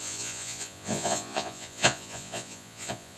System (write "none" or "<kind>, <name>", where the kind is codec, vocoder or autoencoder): vocoder, Vocos